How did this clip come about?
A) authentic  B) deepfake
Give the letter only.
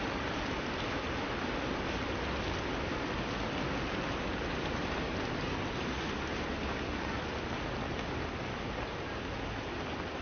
A